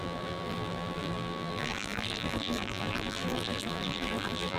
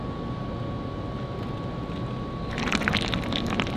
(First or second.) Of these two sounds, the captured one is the second